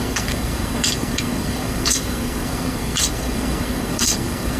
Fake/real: fake